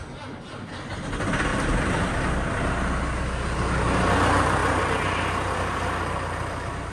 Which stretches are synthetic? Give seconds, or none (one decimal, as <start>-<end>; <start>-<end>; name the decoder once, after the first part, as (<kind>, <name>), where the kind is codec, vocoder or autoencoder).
4.6-6.9 (vocoder, BigVGAN v2)